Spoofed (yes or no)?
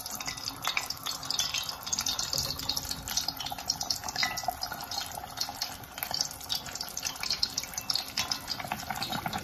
no